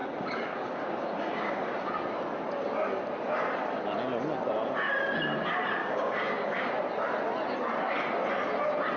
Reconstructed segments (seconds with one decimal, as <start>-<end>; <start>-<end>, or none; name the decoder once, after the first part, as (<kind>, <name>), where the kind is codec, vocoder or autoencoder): 0.0-1.9 (codec, DAC); 5.8-6.7